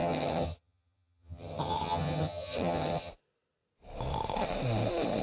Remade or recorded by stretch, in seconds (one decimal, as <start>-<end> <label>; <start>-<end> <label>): 0.0-3.1 remade; 3.1-5.2 recorded